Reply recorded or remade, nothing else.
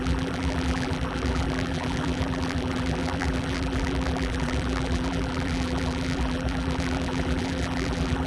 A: remade